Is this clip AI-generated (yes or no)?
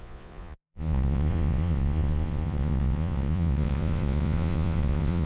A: yes